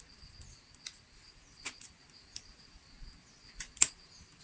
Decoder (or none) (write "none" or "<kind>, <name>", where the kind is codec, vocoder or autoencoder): none